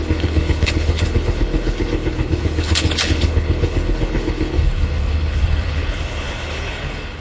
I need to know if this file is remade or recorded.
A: remade